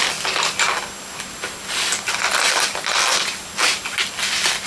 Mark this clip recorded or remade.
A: recorded